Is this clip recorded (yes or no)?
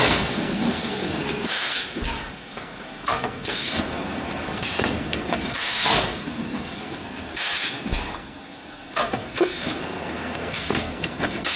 no